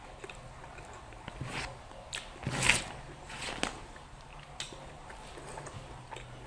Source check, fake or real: real